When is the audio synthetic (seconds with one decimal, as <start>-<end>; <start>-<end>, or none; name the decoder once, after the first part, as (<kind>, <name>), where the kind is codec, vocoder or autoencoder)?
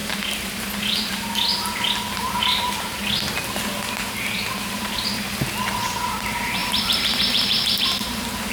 2.1-3.0 (vocoder, BigVGAN v2); 4.3-8.5